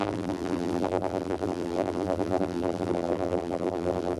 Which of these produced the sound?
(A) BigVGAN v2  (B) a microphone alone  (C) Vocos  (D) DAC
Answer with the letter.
A